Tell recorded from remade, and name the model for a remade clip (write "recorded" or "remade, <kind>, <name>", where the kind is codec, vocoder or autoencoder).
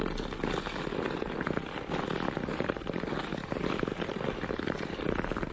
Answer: recorded